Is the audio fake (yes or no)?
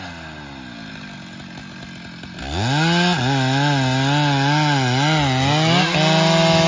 no